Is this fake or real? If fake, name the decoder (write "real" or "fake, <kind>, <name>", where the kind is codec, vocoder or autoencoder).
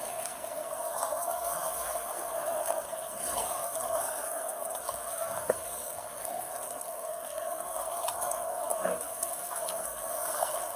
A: fake, codec, SNAC